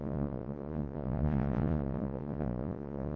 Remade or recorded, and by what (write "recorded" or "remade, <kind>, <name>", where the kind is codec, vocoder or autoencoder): remade, vocoder, Vocos